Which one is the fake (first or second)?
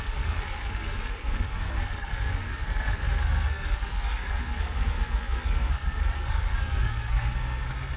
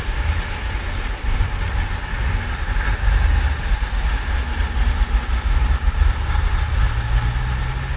first